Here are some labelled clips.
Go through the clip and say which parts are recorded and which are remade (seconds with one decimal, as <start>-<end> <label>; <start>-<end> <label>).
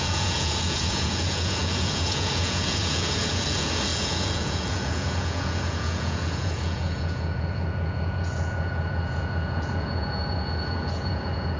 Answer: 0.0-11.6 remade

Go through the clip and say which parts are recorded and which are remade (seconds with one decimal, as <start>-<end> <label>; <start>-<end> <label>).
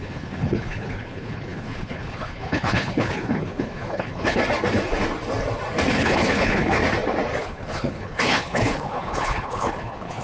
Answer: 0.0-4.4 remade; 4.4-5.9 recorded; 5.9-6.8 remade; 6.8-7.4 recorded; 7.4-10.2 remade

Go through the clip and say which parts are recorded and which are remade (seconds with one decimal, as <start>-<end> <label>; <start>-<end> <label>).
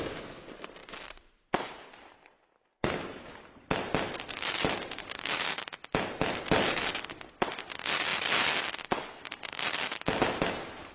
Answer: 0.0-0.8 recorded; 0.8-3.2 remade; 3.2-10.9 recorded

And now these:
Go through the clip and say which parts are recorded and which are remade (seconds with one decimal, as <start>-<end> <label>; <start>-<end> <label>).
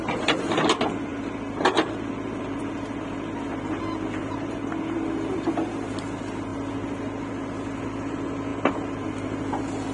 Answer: 0.0-9.9 recorded